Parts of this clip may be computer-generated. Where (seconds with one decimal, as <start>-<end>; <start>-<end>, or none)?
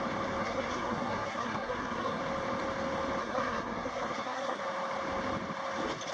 0.4-2.2; 3.2-4.6